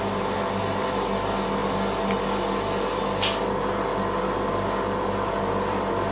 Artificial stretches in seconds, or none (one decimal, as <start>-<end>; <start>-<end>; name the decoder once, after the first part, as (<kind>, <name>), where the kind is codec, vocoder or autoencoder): none